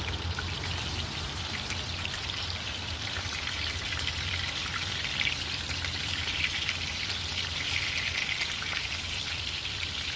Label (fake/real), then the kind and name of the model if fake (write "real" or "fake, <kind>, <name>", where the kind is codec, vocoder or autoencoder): fake, vocoder, BigVGAN v2